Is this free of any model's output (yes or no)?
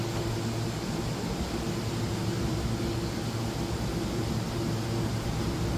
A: yes